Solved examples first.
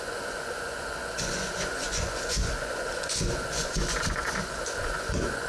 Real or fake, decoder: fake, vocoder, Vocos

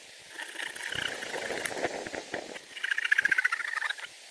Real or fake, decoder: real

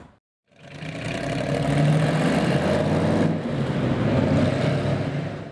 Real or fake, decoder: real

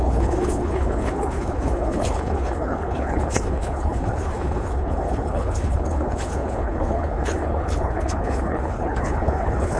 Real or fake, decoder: fake, codec, HILCodec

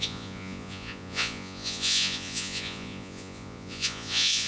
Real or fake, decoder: fake, vocoder, Vocos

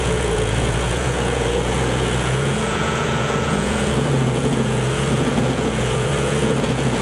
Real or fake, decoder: fake, vocoder, Vocos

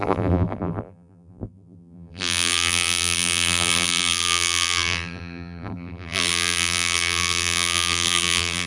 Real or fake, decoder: fake, vocoder, BigVGAN v2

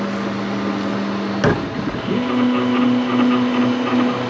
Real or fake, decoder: real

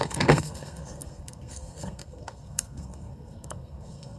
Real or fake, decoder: fake, codec, SNAC